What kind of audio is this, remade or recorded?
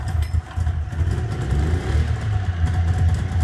recorded